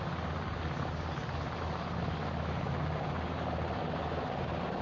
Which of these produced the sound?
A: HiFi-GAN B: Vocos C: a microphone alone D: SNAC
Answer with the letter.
C